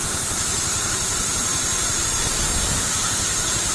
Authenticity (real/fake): fake